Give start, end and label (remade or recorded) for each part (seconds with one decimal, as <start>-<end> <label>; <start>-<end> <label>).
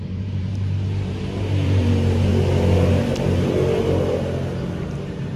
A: 0.0-2.3 remade; 2.3-5.0 recorded; 5.0-5.4 remade